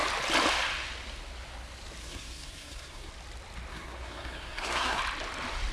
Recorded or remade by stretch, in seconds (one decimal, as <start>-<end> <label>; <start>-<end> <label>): 0.0-2.0 recorded; 2.0-3.1 remade; 3.1-3.7 recorded; 3.7-5.0 remade; 5.0-5.7 recorded